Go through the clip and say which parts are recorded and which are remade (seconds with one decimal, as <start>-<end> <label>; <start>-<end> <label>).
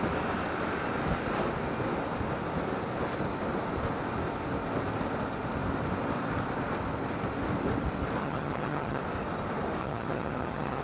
0.0-8.2 recorded; 8.2-9.0 remade; 9.0-9.8 recorded; 9.8-10.8 remade